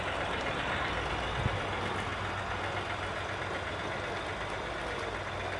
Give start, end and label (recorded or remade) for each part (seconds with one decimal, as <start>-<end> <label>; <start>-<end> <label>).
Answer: 0.0-5.6 recorded